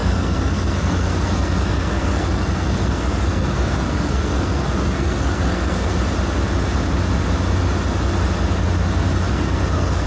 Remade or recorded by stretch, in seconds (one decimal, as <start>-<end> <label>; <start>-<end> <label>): 0.0-6.0 remade; 6.0-9.3 recorded; 9.3-10.1 remade